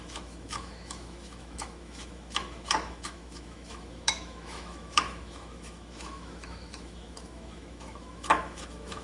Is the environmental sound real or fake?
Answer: fake